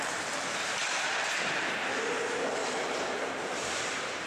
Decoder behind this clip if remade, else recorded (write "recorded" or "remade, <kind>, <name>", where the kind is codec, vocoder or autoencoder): remade, vocoder, BigVGAN v2